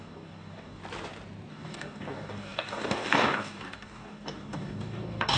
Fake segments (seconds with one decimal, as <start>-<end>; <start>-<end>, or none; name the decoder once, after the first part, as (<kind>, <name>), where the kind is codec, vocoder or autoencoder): 0.0-0.8 (codec, DAC); 1.5-5.4